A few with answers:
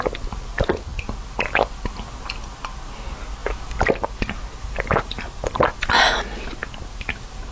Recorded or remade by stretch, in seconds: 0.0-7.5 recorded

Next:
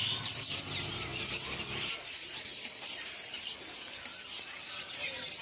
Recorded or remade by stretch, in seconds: 0.0-2.5 recorded; 2.5-3.6 remade; 3.6-5.4 recorded

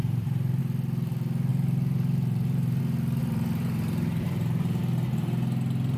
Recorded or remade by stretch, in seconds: 0.0-0.6 remade; 0.6-1.5 recorded; 1.5-2.8 remade; 2.8-3.2 recorded; 3.2-4.8 remade; 4.8-6.0 recorded

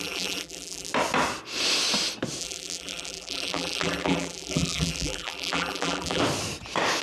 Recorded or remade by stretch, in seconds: 0.0-0.9 remade; 0.9-2.4 recorded; 2.4-6.2 remade; 6.2-7.0 recorded